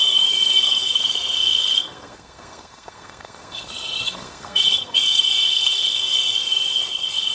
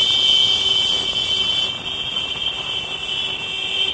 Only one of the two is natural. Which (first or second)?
second